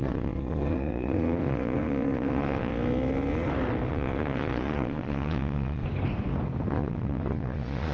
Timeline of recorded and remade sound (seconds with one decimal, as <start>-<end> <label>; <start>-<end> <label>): 0.0-2.7 remade; 2.7-3.9 recorded; 3.9-5.8 remade; 5.8-6.7 recorded; 6.7-7.9 remade